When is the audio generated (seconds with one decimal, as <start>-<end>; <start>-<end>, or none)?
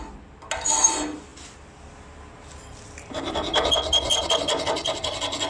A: none